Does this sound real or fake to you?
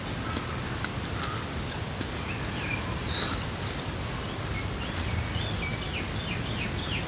real